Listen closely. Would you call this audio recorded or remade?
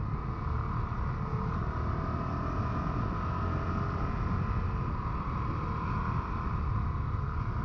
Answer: recorded